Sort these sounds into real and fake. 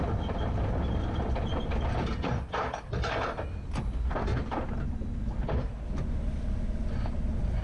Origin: real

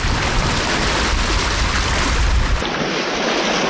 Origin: real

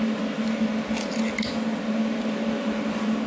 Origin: real